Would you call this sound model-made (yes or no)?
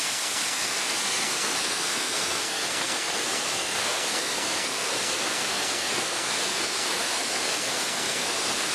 yes